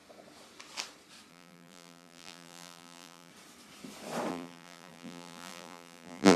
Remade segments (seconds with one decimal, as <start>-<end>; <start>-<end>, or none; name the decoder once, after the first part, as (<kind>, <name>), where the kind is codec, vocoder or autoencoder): 1.3-3.3 (vocoder, BigVGAN v2); 4.3-6.4

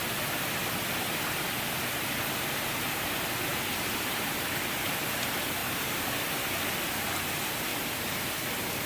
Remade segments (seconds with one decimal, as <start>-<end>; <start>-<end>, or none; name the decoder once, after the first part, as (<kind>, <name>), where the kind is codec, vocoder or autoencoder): 3.5-5.0 (vocoder, BigVGAN v2); 5.6-6.6; 7.7-8.5

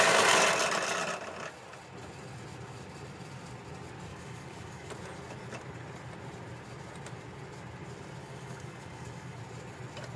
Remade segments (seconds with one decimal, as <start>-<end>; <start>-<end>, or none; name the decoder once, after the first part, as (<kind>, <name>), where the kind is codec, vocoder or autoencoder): 4.1-4.9 (codec, DAC); 8.2-9.4

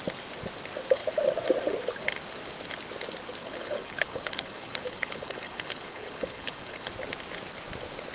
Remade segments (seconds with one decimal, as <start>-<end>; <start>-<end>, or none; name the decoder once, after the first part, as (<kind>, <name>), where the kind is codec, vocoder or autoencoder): 3.4-6.9 (codec, HILCodec)

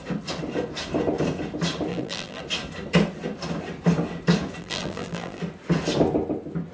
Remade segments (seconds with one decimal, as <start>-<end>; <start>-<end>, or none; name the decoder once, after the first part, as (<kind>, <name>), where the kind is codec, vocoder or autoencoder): 1.9-2.4 (vocoder, BigVGAN v2); 4.6-5.4

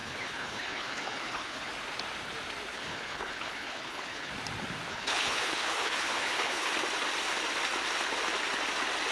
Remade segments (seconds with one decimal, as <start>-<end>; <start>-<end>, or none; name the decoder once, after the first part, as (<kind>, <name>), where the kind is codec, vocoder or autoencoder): 0.0-1.7 (codec, HILCodec); 2.7-4.3; 4.9-6.7